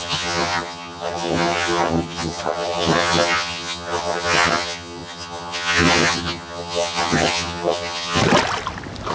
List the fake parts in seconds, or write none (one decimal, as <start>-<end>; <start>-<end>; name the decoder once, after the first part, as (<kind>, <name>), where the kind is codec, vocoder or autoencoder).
0.0-8.2 (vocoder, HiFi-GAN)